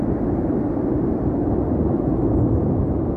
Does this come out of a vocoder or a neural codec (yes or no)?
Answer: no